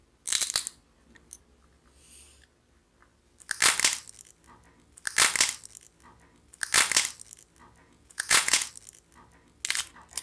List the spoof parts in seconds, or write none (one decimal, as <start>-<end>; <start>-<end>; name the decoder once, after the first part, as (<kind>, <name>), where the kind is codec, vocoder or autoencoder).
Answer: 7.8-8.7 (vocoder, Vocos)